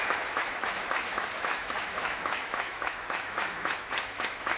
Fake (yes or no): yes